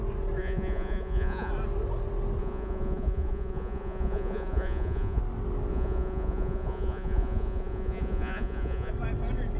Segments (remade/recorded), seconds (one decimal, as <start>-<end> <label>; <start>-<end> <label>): 0.0-0.4 recorded; 0.4-1.5 remade; 1.5-2.4 recorded; 2.4-5.2 remade; 5.2-5.7 recorded; 5.7-8.9 remade; 8.9-9.6 recorded